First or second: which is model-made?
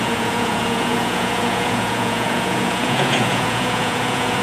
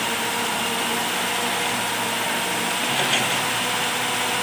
first